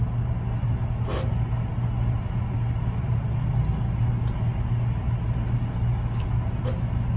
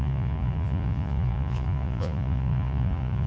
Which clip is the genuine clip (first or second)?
first